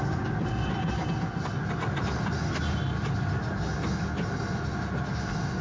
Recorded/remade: recorded